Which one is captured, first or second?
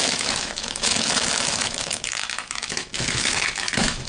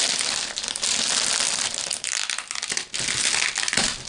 second